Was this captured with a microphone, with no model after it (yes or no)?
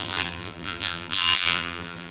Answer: no